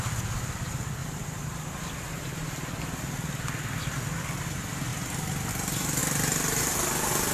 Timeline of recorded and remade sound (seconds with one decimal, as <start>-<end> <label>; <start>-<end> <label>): 0.0-1.0 recorded; 1.0-4.0 remade; 4.0-7.3 recorded